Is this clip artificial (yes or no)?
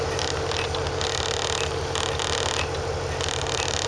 no